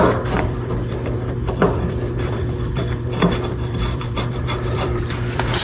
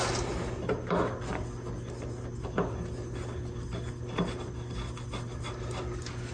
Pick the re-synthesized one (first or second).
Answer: first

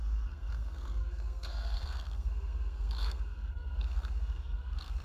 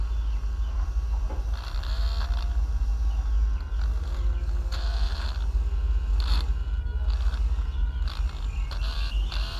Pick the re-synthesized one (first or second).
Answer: first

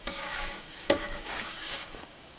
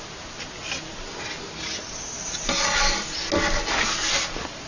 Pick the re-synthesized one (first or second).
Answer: first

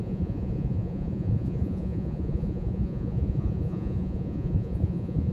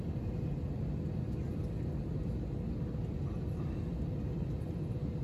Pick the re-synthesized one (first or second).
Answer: first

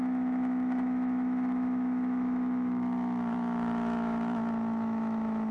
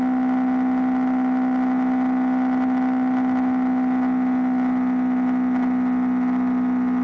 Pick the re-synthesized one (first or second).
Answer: first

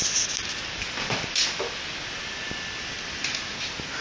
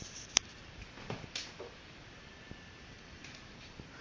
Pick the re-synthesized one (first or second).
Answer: second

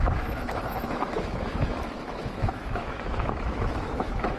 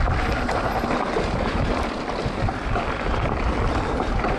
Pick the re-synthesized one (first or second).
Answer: first